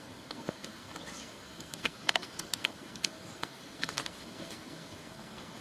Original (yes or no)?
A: no